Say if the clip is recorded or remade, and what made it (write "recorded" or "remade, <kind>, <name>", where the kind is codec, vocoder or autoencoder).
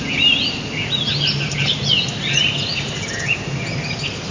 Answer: recorded